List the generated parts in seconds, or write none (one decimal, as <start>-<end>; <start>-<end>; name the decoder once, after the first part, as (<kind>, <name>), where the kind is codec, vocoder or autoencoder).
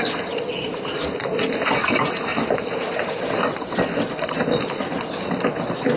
0.5-1.4 (vocoder, BigVGAN v2); 2.3-4.3